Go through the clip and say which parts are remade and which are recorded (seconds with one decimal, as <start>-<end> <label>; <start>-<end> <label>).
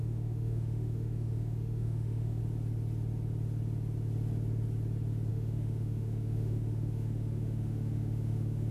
0.0-2.4 remade; 2.4-5.3 recorded; 5.3-8.7 remade